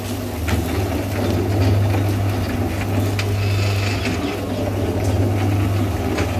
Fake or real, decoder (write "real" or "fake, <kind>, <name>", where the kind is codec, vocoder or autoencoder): real